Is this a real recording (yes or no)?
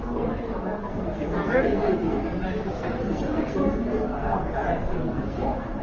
no